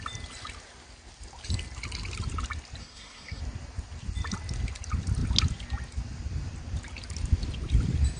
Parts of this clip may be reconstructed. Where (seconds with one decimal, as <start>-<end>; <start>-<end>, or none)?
2.8-3.4